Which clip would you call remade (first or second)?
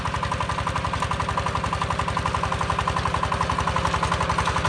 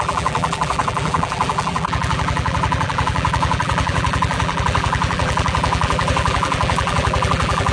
second